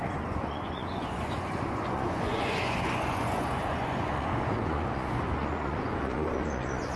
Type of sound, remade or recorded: remade